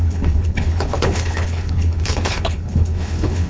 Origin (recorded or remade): remade